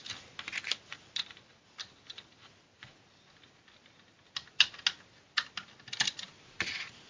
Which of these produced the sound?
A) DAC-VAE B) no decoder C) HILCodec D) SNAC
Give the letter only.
B